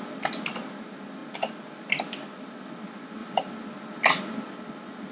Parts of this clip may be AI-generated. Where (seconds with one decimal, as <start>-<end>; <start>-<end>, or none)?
none